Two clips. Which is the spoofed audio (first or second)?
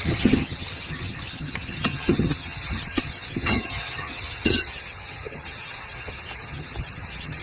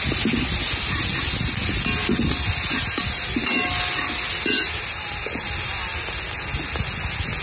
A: first